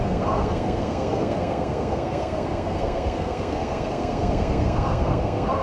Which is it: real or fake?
fake